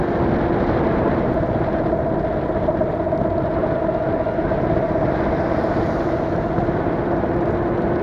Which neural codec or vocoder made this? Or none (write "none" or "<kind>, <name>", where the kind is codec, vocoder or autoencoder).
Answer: none